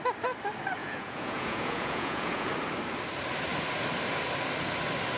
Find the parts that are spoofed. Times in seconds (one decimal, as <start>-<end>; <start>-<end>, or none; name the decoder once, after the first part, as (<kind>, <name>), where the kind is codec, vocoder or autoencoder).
0.8-2.5 (vocoder, Vocos)